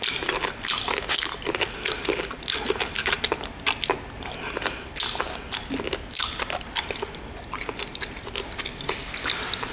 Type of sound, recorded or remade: recorded